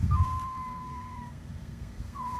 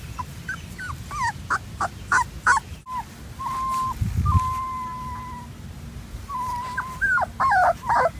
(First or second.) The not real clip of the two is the first